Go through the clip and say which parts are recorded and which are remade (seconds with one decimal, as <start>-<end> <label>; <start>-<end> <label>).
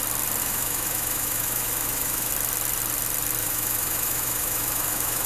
0.0-0.4 recorded; 0.4-2.3 remade; 2.3-3.4 recorded; 3.4-5.3 remade